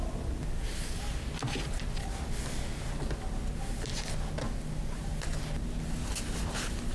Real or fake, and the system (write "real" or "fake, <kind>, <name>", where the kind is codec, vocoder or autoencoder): real